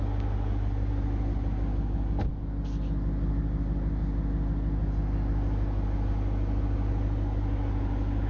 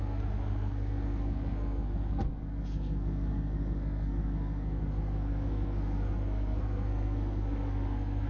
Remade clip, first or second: second